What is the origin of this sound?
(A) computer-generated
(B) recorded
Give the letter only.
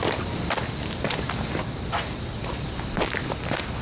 B